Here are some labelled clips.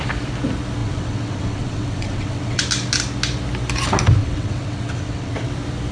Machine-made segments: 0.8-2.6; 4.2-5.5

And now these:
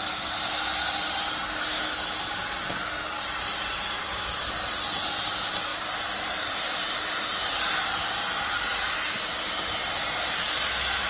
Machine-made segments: none